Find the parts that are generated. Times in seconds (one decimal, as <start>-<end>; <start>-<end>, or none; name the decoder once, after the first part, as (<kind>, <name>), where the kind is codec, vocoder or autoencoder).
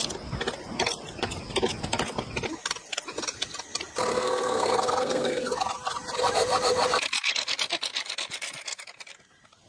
4.1-5.5 (codec, SNAC)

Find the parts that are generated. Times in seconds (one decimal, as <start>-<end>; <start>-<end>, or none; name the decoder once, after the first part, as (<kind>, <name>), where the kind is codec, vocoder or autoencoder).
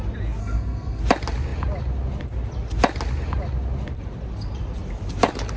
0.4-1.0 (codec, SNAC)